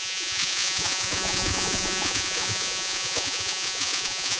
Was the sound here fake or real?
fake